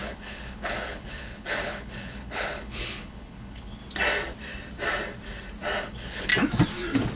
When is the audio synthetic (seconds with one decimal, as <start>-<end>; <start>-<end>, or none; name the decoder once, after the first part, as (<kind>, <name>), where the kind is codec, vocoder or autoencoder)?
0.0-3.8 (codec, HILCodec); 5.8-6.3